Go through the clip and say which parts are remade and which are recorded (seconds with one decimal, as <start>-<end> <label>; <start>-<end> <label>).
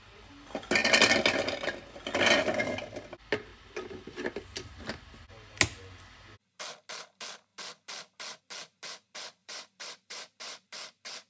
0.0-3.5 recorded; 3.5-4.4 remade; 4.4-9.4 recorded; 9.4-10.4 remade; 10.4-11.3 recorded